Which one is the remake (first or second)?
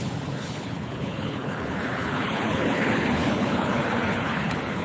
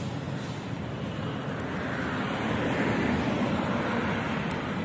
first